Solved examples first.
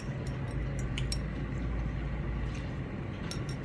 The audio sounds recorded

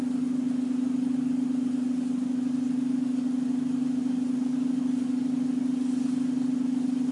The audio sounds recorded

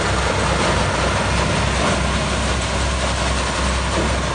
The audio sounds recorded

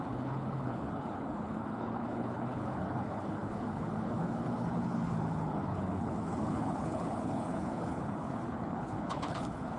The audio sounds remade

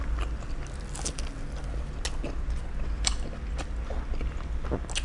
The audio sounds recorded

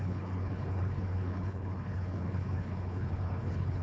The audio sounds remade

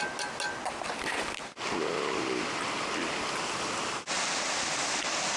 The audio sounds recorded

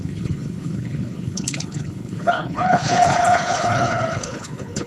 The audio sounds remade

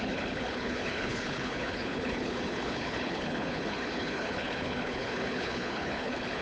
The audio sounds remade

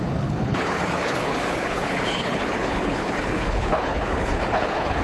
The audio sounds remade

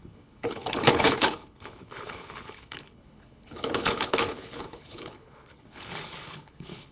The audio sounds remade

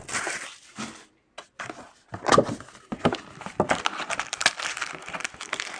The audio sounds recorded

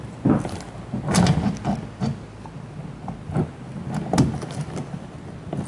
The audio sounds recorded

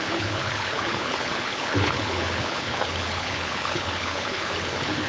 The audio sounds remade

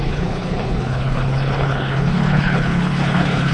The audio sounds remade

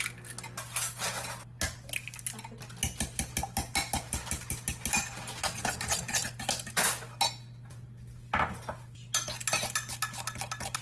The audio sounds recorded